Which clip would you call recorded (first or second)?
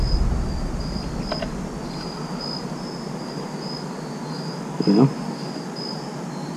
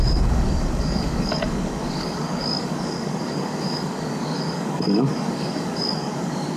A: first